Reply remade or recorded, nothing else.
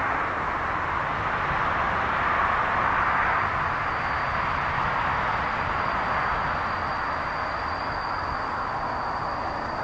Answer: recorded